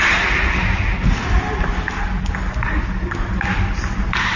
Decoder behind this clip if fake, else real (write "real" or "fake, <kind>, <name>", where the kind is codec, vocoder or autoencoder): real